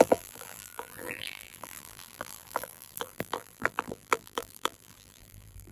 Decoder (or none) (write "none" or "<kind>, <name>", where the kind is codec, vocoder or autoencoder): vocoder, BigVGAN v2